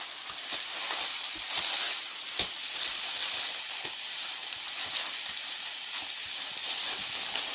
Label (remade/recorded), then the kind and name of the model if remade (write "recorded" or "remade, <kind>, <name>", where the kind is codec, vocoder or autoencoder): recorded